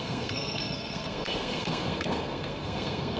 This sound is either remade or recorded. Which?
remade